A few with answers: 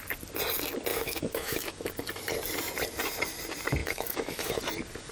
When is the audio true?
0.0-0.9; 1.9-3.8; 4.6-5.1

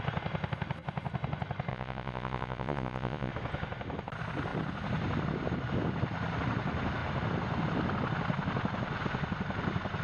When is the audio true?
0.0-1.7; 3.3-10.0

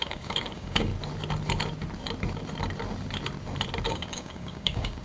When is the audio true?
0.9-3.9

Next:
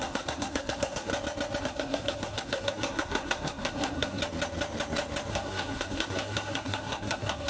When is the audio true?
1.1-1.6; 4.2-5.3